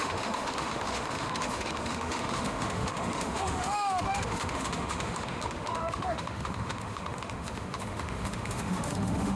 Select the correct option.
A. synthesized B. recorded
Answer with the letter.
A